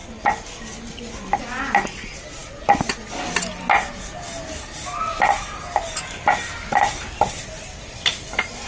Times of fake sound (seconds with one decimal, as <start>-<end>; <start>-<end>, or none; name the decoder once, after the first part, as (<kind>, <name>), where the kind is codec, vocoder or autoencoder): none